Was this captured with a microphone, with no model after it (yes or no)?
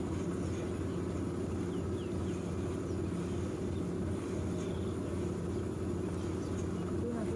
yes